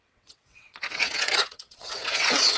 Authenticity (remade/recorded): remade